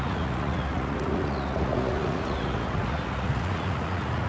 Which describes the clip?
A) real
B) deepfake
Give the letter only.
B